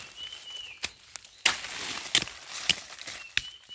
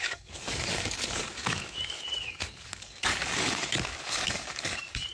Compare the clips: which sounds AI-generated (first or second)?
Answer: second